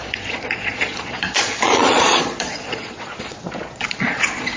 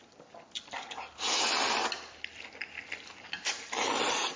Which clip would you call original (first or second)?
second